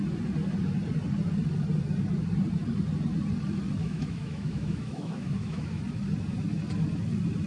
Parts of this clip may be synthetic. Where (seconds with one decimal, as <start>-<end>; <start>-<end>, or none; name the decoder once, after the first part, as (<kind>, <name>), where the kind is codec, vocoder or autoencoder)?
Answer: 3.8-5.8 (autoencoder, DAC-VAE)